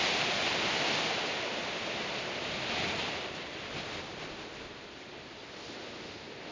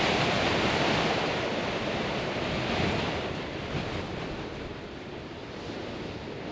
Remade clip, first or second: second